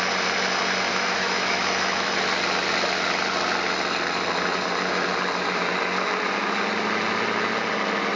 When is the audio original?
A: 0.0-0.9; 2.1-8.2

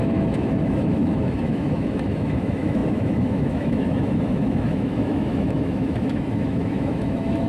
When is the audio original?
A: none

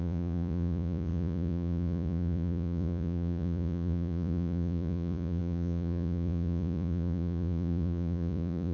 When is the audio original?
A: none

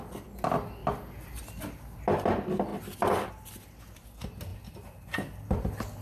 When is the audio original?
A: 0.0-6.0

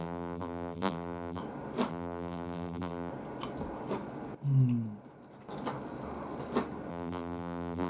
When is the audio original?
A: 1.4-1.9; 3.1-6.9

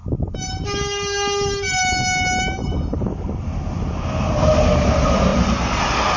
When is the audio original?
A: 0.0-6.2